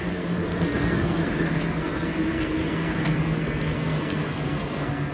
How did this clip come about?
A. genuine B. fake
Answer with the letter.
B